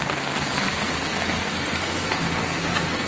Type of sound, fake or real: fake